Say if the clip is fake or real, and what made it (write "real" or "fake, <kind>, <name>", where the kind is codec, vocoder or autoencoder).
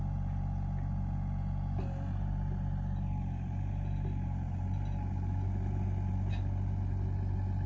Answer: real